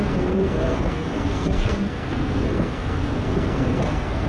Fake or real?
fake